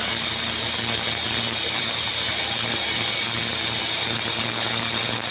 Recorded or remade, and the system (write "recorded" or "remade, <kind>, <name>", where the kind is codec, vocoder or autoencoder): remade, vocoder, BigVGAN v2